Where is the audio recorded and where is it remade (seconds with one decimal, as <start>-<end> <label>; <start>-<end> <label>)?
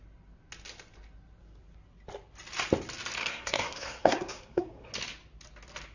0.0-3.2 recorded; 3.2-4.9 remade; 4.9-5.9 recorded